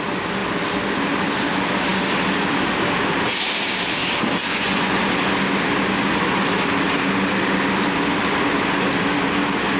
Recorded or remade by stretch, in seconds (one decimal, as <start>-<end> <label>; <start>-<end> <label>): 0.0-4.5 recorded; 4.5-5.0 remade; 5.0-9.8 recorded